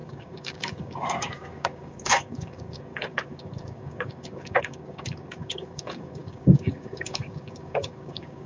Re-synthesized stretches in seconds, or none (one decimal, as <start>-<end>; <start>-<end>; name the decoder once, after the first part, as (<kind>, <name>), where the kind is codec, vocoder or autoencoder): 0.0-8.5 (codec, DAC)